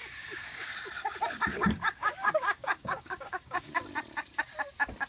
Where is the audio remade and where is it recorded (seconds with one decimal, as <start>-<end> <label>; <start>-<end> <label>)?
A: 0.0-0.7 remade; 0.7-1.5 recorded; 1.5-3.7 remade; 3.7-5.1 recorded

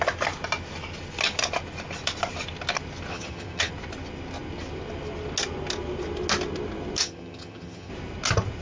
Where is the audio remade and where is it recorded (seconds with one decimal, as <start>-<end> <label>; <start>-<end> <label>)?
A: 0.0-3.1 recorded; 3.1-3.7 remade; 3.7-7.0 recorded; 7.0-7.9 remade; 7.9-8.6 recorded